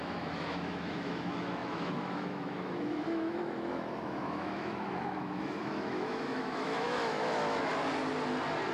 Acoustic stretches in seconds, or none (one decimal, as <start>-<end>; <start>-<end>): 7.7-8.7